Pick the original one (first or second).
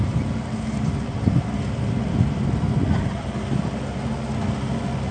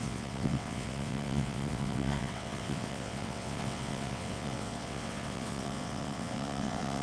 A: first